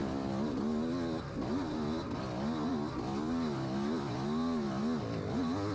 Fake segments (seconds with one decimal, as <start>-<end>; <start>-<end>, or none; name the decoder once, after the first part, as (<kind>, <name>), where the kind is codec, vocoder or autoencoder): none